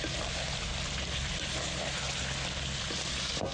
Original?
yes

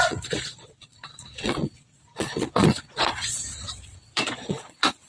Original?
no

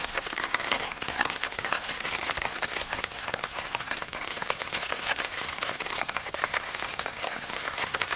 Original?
no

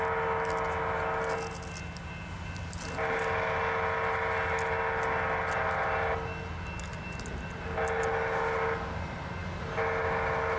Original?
yes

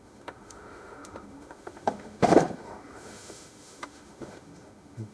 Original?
no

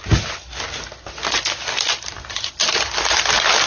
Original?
yes